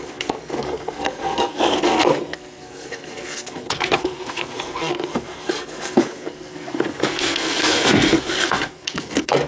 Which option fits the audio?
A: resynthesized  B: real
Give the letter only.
A